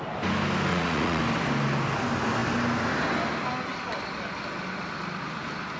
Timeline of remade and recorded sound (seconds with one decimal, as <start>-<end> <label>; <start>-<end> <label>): 0.0-0.7 recorded; 0.7-1.2 remade; 1.2-5.8 recorded

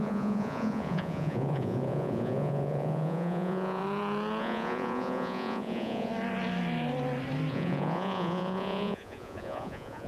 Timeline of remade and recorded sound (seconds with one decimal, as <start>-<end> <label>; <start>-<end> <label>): 0.0-3.8 remade; 3.8-4.4 recorded; 4.4-6.1 remade; 6.1-7.5 recorded; 7.5-10.1 remade

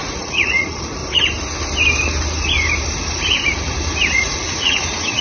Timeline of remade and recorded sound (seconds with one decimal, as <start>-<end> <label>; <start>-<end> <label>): 0.0-1.0 remade; 1.0-4.1 recorded; 4.1-5.2 remade

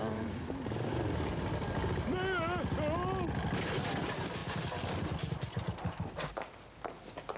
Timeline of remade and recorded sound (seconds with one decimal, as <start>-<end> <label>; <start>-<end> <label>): 0.0-7.4 recorded

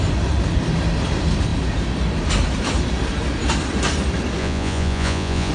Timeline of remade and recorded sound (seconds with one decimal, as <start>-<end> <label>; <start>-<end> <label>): 0.0-4.4 recorded; 4.4-5.5 remade